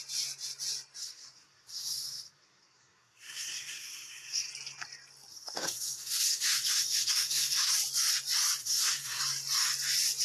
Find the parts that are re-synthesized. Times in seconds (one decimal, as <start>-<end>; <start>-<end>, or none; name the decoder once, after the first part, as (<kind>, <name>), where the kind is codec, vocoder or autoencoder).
1.0-4.5 (codec, SNAC); 5.3-7.7; 8.6-9.2